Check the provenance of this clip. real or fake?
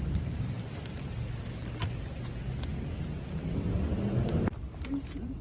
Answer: real